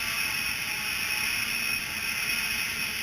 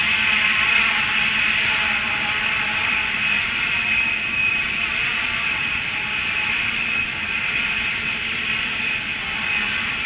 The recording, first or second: first